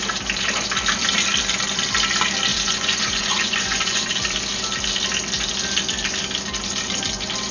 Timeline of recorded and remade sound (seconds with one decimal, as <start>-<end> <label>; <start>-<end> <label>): 0.0-2.5 recorded; 2.5-4.1 remade; 4.1-7.5 recorded